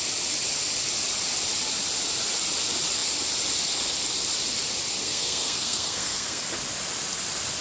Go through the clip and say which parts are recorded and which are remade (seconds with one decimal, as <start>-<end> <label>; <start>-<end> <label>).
0.0-5.0 recorded; 5.0-6.4 remade; 6.4-7.6 recorded